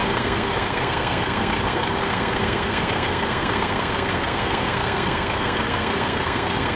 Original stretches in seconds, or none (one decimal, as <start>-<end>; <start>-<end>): none